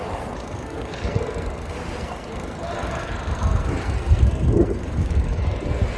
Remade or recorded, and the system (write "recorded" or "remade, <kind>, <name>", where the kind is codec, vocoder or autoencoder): remade, codec, SNAC